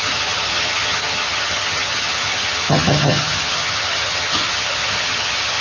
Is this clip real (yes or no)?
no